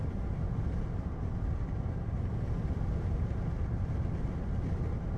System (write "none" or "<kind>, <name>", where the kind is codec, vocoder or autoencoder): none